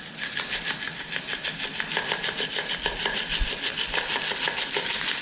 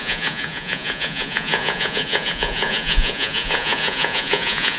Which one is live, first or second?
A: first